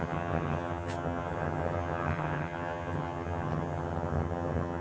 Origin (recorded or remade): remade